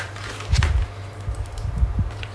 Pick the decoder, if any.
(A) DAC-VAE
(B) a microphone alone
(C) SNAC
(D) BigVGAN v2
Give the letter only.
D